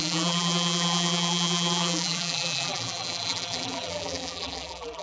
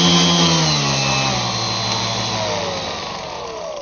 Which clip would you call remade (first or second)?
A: first